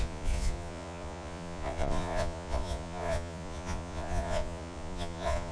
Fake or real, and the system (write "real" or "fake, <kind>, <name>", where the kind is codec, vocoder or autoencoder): fake, vocoder, Vocos